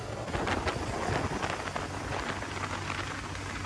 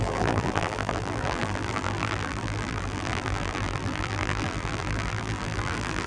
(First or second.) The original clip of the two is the first